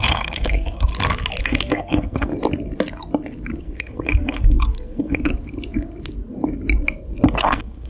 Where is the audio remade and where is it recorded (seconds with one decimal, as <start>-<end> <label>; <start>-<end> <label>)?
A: 0.0-0.9 remade; 0.9-1.4 recorded; 1.4-2.3 remade; 2.3-3.6 recorded; 3.6-5.3 remade; 5.3-7.4 recorded; 7.4-7.9 remade

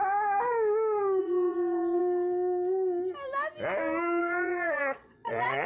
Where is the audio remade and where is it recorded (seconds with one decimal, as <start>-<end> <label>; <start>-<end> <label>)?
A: 0.0-1.2 recorded; 1.2-2.0 remade; 2.0-4.2 recorded; 4.2-5.7 remade

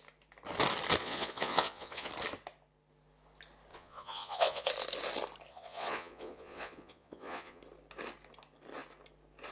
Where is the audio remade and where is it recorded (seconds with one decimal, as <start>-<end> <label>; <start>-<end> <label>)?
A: 0.0-1.0 recorded; 1.0-2.1 remade; 2.1-3.7 recorded; 3.7-4.7 remade; 4.7-5.5 recorded; 5.5-7.6 remade; 7.6-9.5 recorded

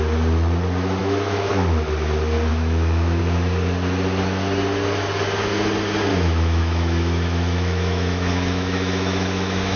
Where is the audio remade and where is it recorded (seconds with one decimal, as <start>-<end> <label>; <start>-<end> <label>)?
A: 0.0-1.0 recorded; 1.0-1.5 remade; 1.5-2.5 recorded; 2.5-3.2 remade; 3.2-6.1 recorded; 6.1-9.8 remade

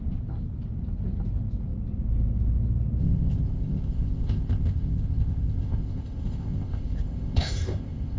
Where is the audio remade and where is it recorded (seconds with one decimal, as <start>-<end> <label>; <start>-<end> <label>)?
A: 0.0-3.0 recorded; 3.0-8.2 remade

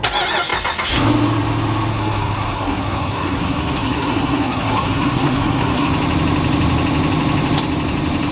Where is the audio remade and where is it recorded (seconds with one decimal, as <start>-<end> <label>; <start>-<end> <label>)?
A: 0.0-1.9 recorded; 1.9-5.9 remade; 5.9-8.3 recorded